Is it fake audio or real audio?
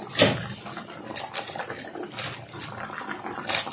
real